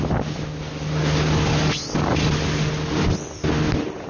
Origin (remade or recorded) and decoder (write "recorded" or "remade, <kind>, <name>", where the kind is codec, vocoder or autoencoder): recorded